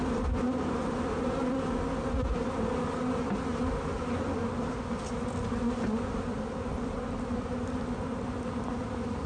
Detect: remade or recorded recorded